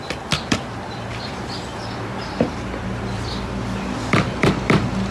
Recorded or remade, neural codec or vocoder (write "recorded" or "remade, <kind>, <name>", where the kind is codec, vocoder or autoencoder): remade, vocoder, BigVGAN v2